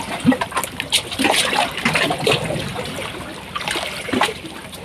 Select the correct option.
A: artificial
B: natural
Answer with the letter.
B